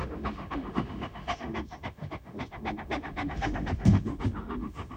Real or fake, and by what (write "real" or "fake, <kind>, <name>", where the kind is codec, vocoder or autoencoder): fake, autoencoder, DAC-VAE